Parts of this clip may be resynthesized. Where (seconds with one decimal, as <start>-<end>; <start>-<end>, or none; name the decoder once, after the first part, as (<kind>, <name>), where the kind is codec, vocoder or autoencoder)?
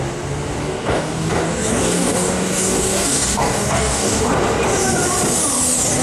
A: 0.6-4.2 (codec, DAC)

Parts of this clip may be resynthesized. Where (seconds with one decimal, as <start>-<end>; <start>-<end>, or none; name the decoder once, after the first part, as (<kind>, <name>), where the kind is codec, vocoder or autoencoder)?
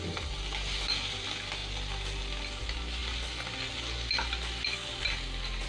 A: none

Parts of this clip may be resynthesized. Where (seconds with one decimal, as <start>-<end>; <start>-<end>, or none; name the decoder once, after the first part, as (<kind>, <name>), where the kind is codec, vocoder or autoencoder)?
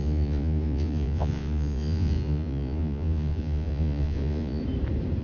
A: 0.0-4.6 (vocoder, Vocos)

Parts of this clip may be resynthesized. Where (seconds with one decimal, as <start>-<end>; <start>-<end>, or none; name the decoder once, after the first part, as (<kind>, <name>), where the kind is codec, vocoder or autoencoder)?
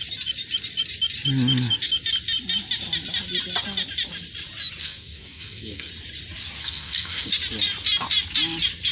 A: 4.8-5.9 (codec, SNAC); 6.6-7.3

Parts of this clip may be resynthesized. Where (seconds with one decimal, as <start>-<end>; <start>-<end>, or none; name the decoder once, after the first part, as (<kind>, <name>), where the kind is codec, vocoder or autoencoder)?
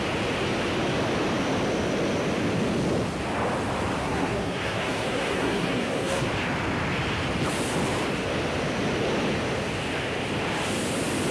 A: 4.0-6.3 (codec, SNAC)